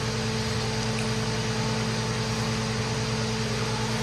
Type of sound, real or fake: real